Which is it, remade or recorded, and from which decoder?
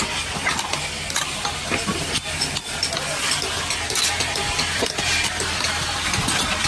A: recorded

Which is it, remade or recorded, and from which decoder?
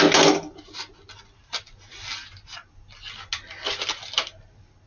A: recorded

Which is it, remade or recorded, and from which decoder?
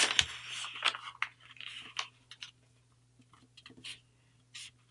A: recorded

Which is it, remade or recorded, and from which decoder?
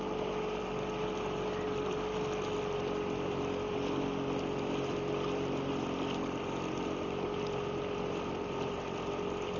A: recorded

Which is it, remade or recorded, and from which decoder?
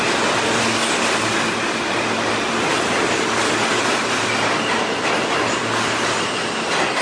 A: recorded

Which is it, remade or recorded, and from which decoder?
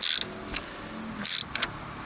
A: recorded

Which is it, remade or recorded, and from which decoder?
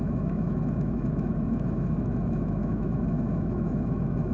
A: remade, autoencoder, DAC-VAE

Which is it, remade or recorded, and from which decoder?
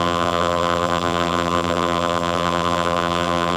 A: remade, vocoder, BigVGAN v2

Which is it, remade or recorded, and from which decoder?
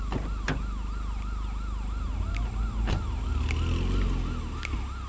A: recorded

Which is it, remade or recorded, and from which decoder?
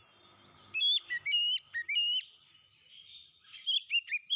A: recorded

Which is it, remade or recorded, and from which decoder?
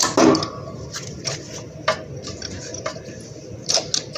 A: recorded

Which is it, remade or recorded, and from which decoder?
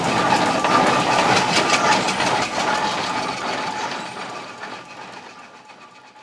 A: recorded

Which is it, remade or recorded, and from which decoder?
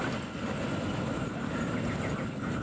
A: recorded